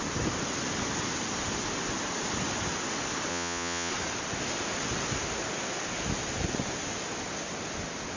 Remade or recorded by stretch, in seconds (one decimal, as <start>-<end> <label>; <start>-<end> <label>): 0.0-3.3 recorded; 3.3-3.9 remade; 3.9-8.2 recorded